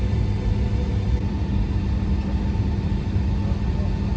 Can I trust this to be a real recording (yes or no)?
yes